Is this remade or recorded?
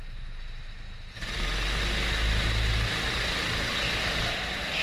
recorded